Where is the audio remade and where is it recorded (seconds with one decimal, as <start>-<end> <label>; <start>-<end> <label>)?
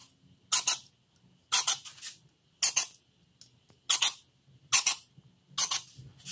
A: 0.0-6.3 recorded